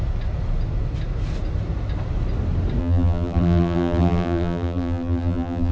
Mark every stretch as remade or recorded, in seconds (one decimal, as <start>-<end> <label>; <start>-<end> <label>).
0.0-2.8 recorded; 2.8-5.7 remade